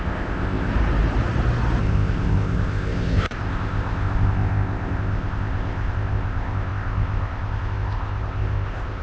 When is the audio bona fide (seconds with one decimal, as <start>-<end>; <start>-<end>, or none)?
0.7-1.8